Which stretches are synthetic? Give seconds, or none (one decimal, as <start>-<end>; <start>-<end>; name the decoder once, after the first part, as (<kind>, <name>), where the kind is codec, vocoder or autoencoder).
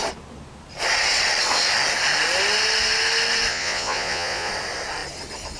3.5-4.5 (vocoder, Vocos)